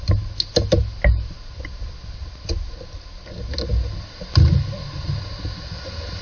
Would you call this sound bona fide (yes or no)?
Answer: yes